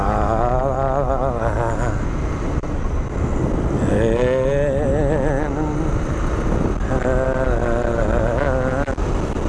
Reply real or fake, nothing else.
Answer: real